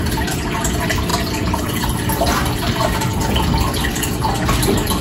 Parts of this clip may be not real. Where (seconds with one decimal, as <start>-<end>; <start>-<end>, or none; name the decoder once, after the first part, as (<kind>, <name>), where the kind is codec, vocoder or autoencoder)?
none

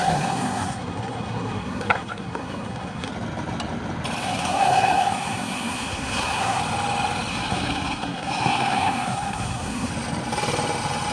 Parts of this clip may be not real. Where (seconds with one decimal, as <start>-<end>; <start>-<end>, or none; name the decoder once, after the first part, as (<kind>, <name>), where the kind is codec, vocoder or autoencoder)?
0.0-3.1 (codec, SNAC); 4.2-6.6; 7.3-9.9

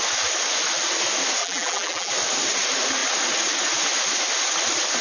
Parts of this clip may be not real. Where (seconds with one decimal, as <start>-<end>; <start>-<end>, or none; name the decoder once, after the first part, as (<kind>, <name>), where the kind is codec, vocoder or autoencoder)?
1.4-2.1 (vocoder, BigVGAN v2)

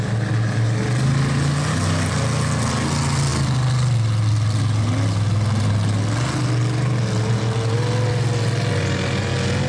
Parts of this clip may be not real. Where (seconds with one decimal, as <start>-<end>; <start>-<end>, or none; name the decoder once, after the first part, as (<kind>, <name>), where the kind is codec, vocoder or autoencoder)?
none